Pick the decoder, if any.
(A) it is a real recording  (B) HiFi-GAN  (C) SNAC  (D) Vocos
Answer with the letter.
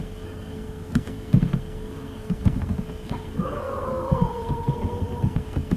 C